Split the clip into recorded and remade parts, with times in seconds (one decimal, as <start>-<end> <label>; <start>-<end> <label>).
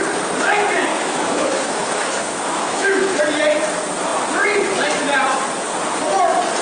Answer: 0.0-0.9 recorded; 0.9-3.2 remade; 3.2-6.6 recorded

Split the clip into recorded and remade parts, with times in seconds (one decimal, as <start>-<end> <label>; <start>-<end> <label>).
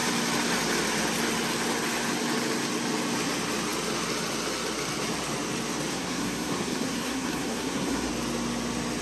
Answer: 0.0-5.9 recorded; 5.9-8.1 remade; 8.1-9.0 recorded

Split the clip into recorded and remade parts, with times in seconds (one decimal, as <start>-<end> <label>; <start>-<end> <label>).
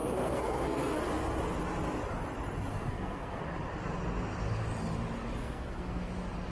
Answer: 0.0-1.0 remade; 1.0-2.7 recorded; 2.7-3.4 remade; 3.4-5.4 recorded; 5.4-6.1 remade; 6.1-6.5 recorded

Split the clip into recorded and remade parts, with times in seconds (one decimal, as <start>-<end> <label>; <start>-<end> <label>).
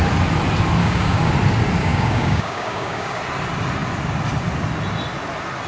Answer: 0.0-0.8 recorded; 0.8-1.3 remade; 1.3-1.8 recorded; 1.8-3.2 remade; 3.2-5.7 recorded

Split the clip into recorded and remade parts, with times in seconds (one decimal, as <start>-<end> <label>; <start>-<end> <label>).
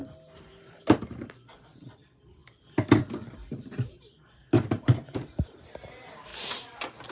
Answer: 0.0-2.4 remade; 2.4-3.3 recorded; 3.3-6.3 remade; 6.3-7.1 recorded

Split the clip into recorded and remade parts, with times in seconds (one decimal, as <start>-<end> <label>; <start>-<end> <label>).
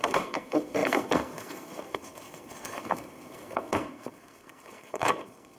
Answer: 0.0-5.6 remade